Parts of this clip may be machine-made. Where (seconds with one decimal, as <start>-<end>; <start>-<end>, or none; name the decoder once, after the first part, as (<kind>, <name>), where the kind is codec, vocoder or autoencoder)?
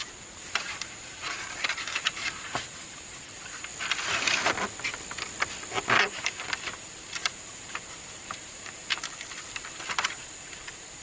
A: 0.0-3.7 (vocoder, BigVGAN v2); 6.0-11.0